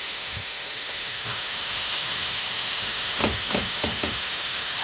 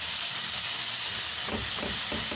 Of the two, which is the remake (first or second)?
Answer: first